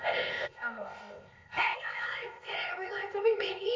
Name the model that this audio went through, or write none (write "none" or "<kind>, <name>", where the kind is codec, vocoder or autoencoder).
codec, ZipCodec